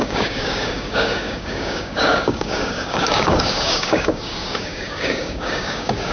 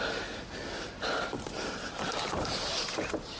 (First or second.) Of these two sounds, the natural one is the second